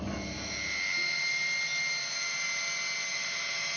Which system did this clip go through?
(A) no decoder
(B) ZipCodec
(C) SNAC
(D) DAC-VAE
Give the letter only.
A